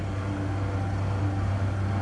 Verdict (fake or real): real